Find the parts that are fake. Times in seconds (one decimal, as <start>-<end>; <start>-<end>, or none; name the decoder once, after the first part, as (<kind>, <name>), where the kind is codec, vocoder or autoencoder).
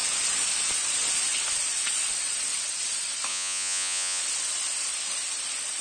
3.3-4.2 (vocoder, Vocos)